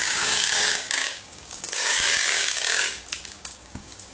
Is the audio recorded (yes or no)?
no